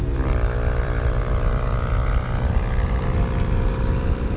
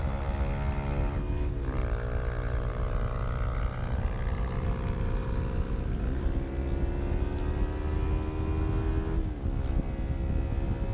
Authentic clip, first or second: second